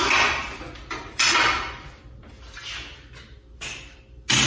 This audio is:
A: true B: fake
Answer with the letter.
A